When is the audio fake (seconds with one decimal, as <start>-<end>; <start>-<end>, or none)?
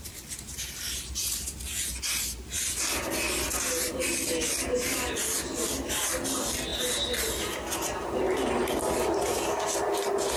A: none